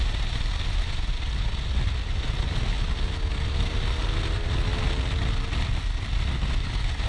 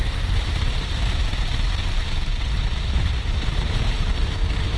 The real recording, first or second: first